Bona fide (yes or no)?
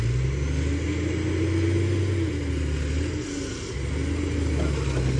yes